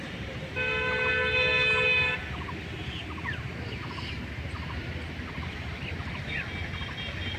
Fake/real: real